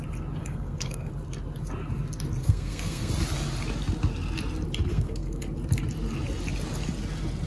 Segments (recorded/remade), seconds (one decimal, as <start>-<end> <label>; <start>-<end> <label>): 0.0-0.4 recorded; 0.4-1.1 remade; 1.1-2.4 recorded; 2.4-3.1 remade; 3.1-4.9 recorded; 4.9-5.4 remade; 5.4-7.5 recorded